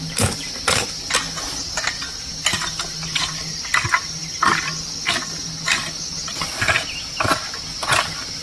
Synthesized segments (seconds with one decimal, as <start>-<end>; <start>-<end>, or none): none